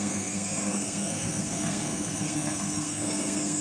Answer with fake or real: fake